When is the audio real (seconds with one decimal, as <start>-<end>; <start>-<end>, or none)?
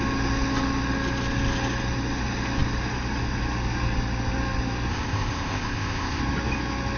0.0-4.9; 6.2-7.0